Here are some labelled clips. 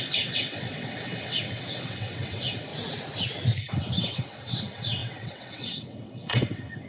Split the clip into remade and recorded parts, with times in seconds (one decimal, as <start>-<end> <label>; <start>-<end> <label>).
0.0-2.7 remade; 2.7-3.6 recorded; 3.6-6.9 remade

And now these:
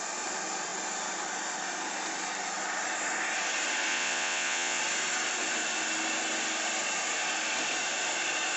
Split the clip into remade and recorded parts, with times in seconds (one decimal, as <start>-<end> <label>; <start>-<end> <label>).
0.0-3.9 recorded; 3.9-4.8 remade; 4.8-8.6 recorded

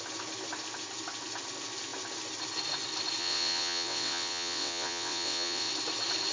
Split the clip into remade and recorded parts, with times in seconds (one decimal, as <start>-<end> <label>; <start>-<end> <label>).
0.0-3.2 recorded; 3.2-5.7 remade; 5.7-6.3 recorded

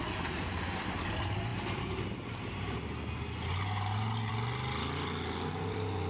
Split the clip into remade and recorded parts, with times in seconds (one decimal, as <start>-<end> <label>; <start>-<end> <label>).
0.0-6.1 recorded

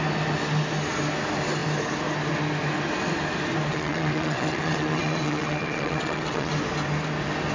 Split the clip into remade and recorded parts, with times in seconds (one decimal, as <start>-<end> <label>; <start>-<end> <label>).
0.0-3.7 recorded; 3.7-6.5 remade; 6.5-7.5 recorded

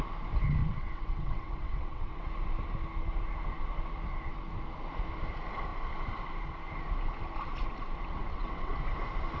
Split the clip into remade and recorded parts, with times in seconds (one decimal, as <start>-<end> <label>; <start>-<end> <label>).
0.0-0.6 recorded; 0.6-2.3 remade; 2.3-8.2 recorded; 8.2-8.7 remade; 8.7-9.4 recorded